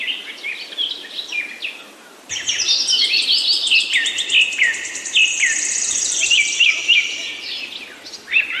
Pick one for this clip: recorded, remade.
recorded